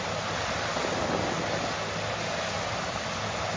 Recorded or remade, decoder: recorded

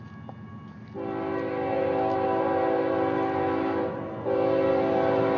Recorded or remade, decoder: recorded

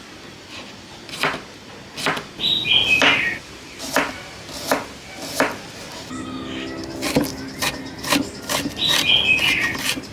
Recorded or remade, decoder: recorded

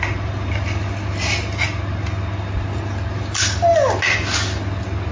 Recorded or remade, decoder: recorded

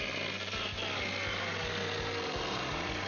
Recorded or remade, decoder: recorded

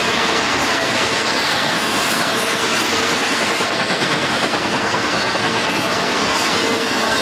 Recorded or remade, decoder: remade, codec, SNAC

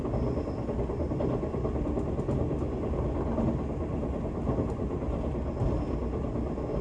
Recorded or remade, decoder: recorded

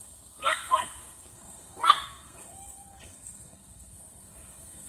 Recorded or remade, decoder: remade, codec, SNAC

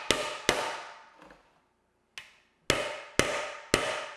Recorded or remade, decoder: recorded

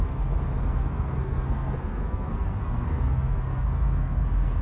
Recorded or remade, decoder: remade, codec, SNAC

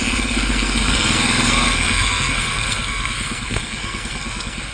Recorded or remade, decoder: remade, codec, SNAC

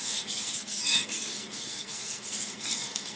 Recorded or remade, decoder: remade, codec, SNAC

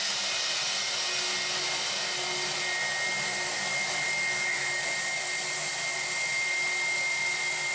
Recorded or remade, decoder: recorded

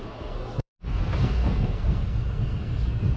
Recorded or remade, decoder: remade, codec, SNAC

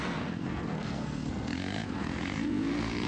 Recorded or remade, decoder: remade, codec, SNAC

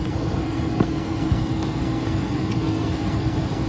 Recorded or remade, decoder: remade, codec, SNAC